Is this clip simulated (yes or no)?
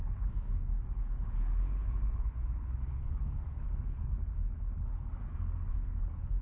yes